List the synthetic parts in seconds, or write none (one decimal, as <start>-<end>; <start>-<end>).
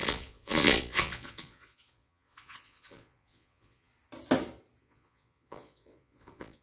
0.0-3.9; 4.8-6.6